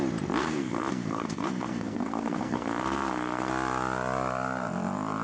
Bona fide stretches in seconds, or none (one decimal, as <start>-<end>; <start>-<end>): 0.0-0.4; 3.5-5.2